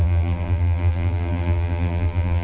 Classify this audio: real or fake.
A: fake